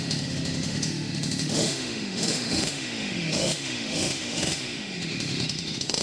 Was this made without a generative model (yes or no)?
no